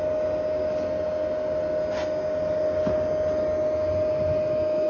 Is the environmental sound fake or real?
real